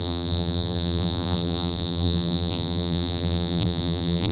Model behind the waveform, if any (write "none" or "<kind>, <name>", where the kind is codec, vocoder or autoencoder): vocoder, BigVGAN v2